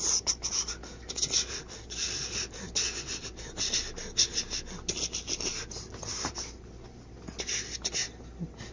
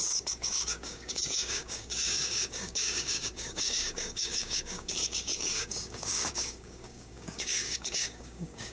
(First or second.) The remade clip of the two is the second